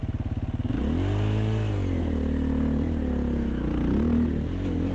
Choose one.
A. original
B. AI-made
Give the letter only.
A